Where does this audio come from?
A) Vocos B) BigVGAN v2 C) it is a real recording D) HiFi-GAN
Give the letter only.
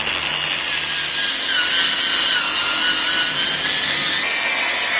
C